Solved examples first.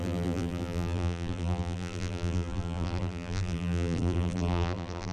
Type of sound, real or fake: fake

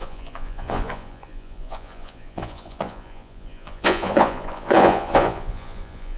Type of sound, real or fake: fake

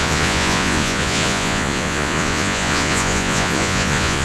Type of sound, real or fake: fake